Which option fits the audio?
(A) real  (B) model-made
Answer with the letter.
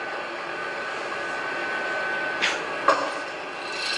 A